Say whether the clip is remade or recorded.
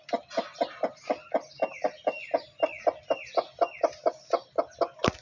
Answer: recorded